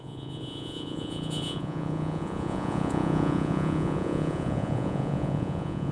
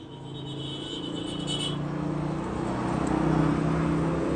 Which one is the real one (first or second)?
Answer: second